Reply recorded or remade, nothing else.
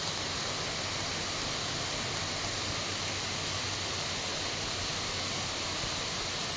recorded